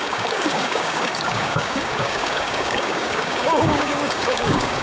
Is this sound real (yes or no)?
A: no